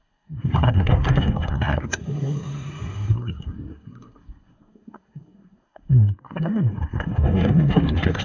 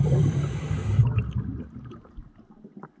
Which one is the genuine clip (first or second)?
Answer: second